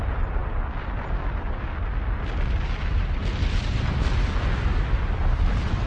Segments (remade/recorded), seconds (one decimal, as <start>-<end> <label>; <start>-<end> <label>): 0.0-5.9 recorded